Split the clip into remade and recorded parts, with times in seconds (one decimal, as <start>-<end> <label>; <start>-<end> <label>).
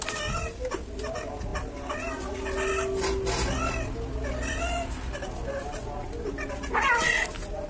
0.0-7.7 recorded